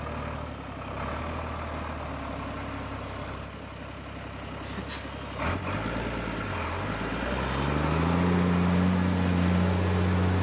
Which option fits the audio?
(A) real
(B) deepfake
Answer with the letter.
A